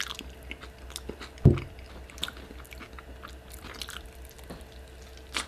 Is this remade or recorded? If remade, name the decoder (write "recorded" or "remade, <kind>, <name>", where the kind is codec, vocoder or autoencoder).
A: recorded